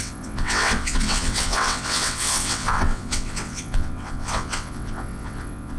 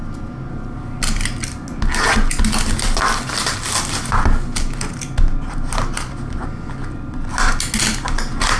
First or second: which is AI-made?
first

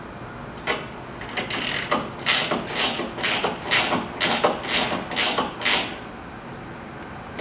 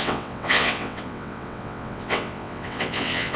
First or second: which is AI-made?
second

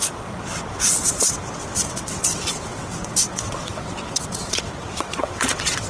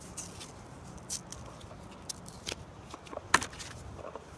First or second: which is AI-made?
first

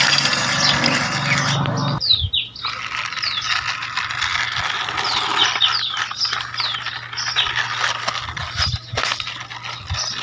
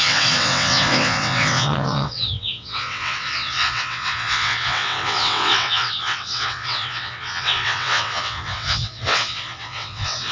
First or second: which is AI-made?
second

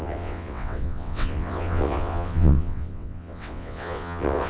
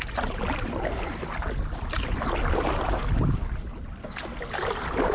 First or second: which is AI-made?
first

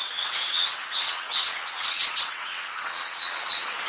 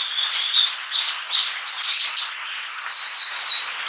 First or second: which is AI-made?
first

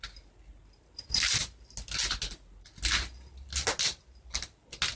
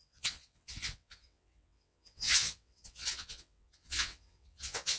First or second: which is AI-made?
second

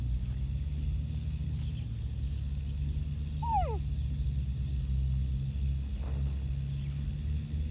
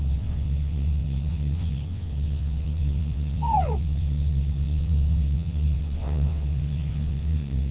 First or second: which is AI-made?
second